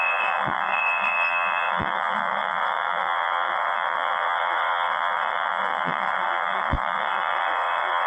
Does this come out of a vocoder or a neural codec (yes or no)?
yes